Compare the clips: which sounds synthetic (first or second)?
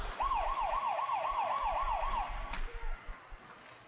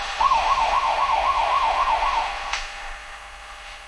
second